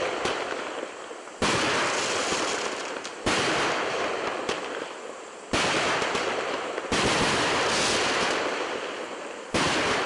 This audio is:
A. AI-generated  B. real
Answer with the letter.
B